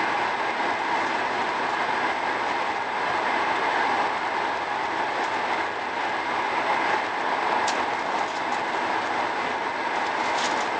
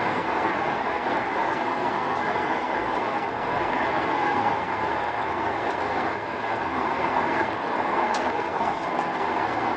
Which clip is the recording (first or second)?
first